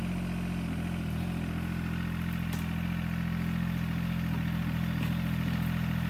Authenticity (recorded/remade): recorded